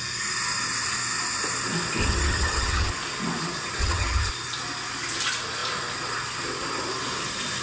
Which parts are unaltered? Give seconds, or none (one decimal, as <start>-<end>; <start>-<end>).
0.0-2.0; 2.9-3.8; 4.3-7.6